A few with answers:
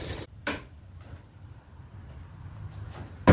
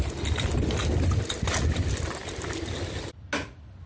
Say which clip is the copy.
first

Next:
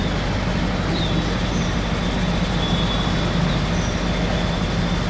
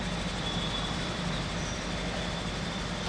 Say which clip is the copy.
second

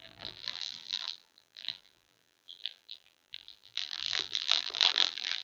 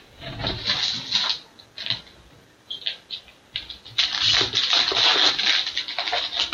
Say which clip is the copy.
first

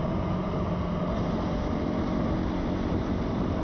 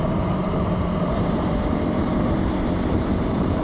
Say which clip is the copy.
second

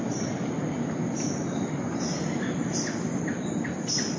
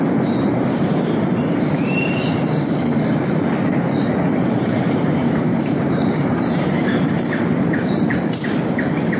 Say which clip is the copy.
second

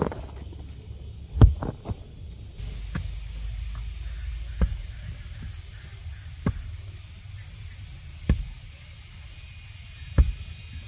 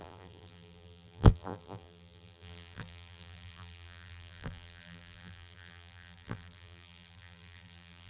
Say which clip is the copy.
second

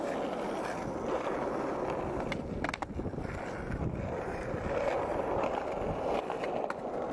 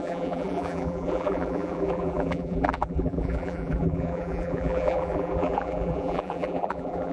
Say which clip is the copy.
second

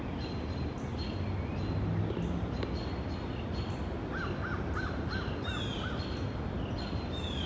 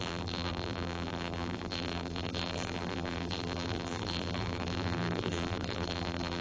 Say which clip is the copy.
second